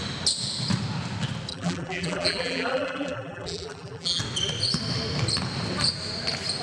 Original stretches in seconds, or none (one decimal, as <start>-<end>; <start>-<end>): 0.0-1.5; 4.2-6.6